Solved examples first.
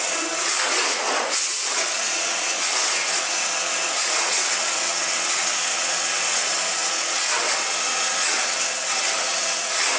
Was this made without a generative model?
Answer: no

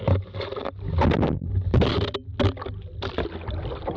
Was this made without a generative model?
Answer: yes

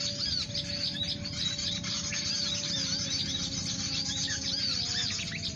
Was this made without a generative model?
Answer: yes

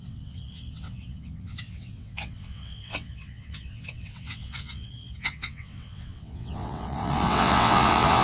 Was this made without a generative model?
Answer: no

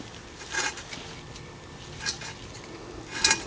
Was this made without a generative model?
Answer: yes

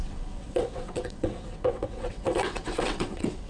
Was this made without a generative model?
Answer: no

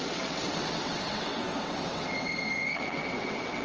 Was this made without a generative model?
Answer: no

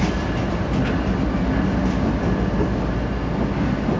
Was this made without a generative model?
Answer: yes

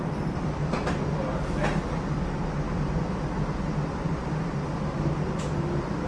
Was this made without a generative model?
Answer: yes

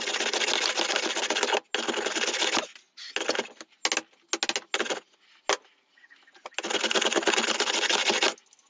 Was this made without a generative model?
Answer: yes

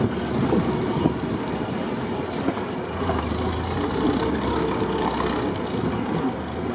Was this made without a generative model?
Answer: yes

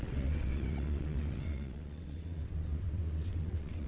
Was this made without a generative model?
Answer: no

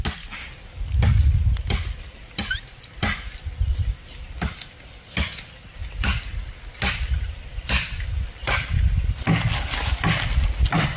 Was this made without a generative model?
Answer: yes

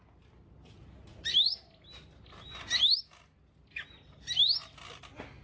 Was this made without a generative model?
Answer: yes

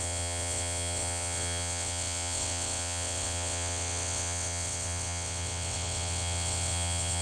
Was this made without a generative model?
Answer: no